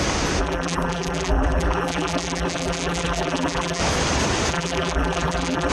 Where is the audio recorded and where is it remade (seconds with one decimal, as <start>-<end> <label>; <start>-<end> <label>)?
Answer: 0.0-0.4 recorded; 0.4-3.8 remade; 3.8-4.5 recorded; 4.5-5.7 remade